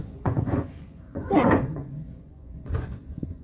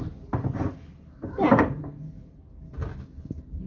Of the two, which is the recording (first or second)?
second